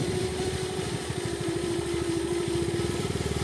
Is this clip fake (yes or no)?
yes